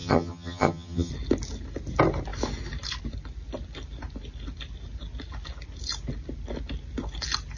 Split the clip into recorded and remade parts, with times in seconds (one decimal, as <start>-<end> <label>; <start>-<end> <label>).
0.0-1.1 remade; 1.1-7.6 recorded